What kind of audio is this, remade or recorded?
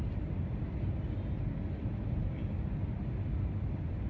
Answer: recorded